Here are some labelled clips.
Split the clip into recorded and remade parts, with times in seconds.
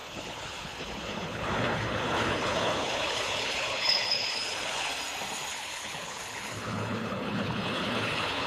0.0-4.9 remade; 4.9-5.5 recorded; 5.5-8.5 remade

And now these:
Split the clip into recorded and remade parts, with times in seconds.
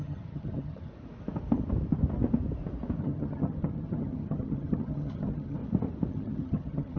0.0-0.9 remade; 0.9-3.0 recorded; 3.0-5.6 remade; 5.6-6.1 recorded; 6.1-7.0 remade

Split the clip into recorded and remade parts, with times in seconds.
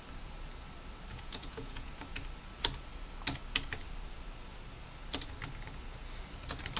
0.0-1.1 recorded; 1.1-1.9 remade; 1.9-6.8 recorded